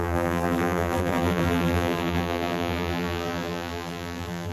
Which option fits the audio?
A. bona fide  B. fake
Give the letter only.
B